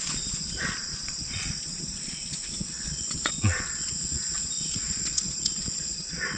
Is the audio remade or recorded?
remade